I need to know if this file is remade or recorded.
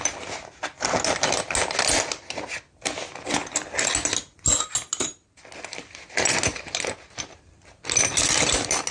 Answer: recorded